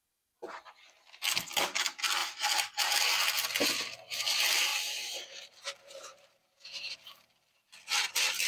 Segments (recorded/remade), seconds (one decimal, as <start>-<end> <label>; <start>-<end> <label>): 0.0-2.2 recorded; 2.2-3.0 remade; 3.0-4.7 recorded; 4.7-7.7 remade; 7.7-8.5 recorded